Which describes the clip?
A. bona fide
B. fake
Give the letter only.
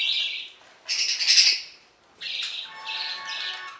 A